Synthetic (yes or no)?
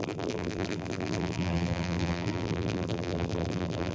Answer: yes